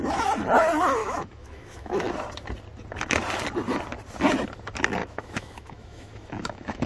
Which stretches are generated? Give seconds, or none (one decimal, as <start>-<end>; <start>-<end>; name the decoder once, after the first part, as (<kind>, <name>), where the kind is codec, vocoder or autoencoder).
1.0-2.1 (autoencoder, DAC-VAE); 5.0-6.9

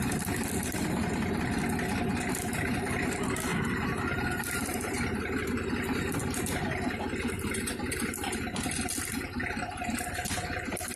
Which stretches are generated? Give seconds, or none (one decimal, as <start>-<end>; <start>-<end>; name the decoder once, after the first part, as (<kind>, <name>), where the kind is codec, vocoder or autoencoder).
3.5-5.3 (vocoder, BigVGAN v2)